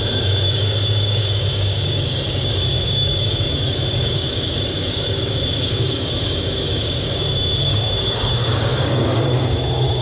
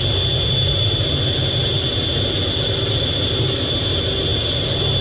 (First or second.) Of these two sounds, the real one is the second